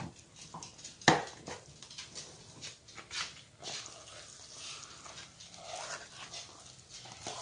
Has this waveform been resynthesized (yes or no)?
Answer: no